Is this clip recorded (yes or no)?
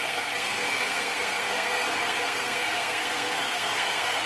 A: no